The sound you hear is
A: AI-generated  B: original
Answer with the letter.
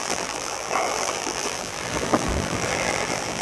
A